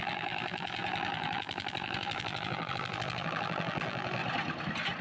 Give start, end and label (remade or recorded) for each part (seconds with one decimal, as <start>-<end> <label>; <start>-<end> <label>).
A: 0.0-4.2 remade; 4.2-5.0 recorded